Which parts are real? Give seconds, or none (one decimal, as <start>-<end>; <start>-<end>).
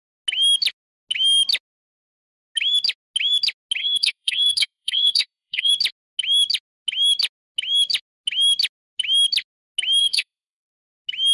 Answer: 0.0-3.8; 5.7-10.0; 10.8-11.3